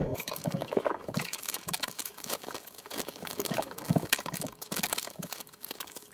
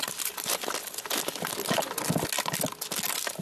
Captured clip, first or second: second